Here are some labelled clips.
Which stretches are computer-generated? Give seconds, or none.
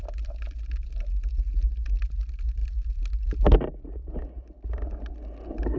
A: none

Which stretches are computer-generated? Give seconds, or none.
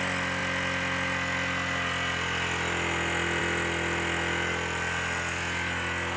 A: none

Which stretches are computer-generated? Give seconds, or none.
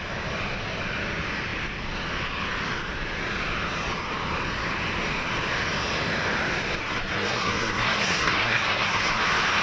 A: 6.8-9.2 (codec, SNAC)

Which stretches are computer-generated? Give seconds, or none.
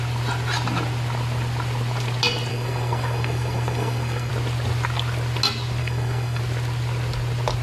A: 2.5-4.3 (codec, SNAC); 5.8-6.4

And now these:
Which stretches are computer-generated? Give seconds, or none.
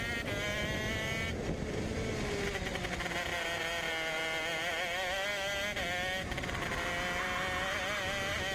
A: none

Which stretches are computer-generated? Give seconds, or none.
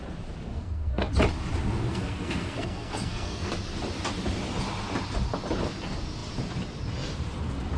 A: 0.5-1.1 (codec, SNAC); 1.9-3.5